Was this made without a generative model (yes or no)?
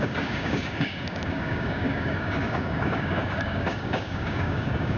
no